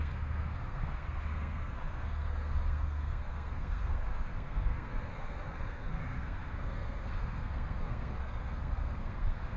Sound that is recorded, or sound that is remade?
remade